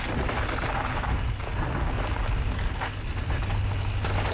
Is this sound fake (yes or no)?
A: no